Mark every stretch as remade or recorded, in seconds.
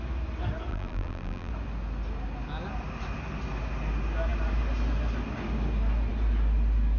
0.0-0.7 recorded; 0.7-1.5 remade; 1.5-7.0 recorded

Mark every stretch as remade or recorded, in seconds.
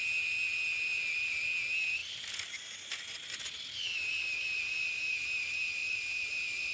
0.0-5.8 recorded; 5.8-6.3 remade; 6.3-6.7 recorded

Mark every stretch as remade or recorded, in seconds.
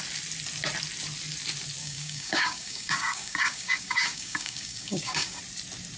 0.0-1.8 recorded; 1.8-5.4 remade; 5.4-6.0 recorded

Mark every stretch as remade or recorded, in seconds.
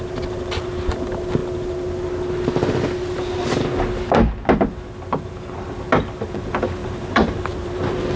0.0-6.8 recorded; 6.8-8.2 remade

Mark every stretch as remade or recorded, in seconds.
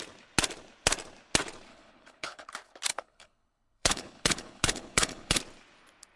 0.0-1.7 recorded; 1.7-2.5 remade; 2.5-2.9 recorded; 2.9-5.4 remade; 5.4-6.2 recorded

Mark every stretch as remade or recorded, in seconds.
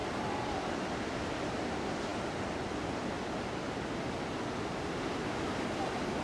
0.0-6.2 recorded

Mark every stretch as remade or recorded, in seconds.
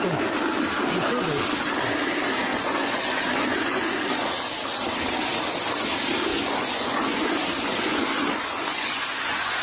0.0-2.5 recorded; 2.5-4.2 remade; 4.2-6.3 recorded; 6.3-9.6 remade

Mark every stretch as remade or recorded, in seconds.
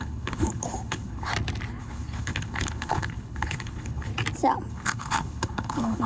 0.0-1.3 remade; 1.3-1.8 recorded; 1.8-4.1 remade; 4.1-4.7 recorded; 4.7-6.1 remade